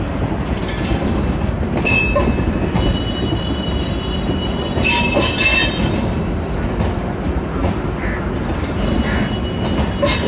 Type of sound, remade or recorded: recorded